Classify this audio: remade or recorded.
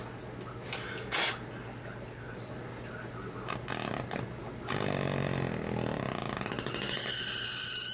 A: recorded